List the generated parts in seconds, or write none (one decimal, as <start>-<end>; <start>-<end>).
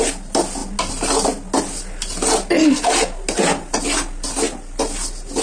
none